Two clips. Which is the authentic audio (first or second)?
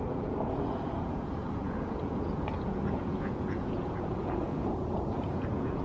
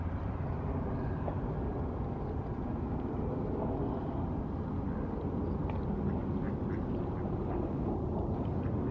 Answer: second